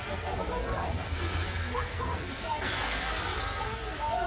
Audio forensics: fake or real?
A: fake